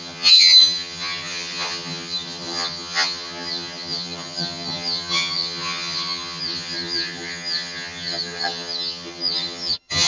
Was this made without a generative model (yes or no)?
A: no